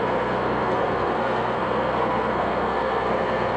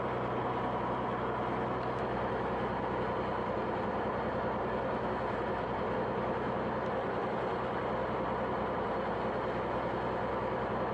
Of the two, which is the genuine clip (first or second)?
second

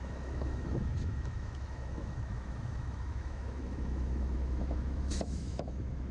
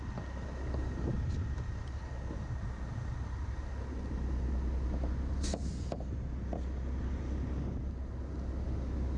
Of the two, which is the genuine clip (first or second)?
second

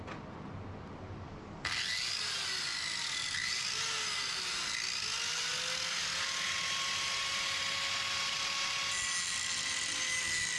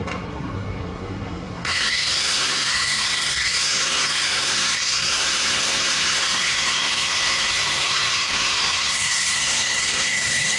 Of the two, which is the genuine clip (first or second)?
first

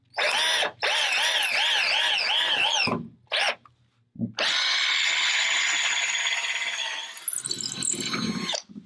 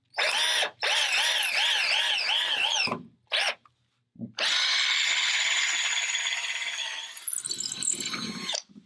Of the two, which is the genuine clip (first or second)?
first